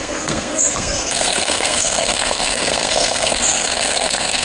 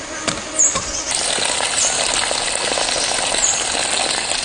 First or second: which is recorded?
second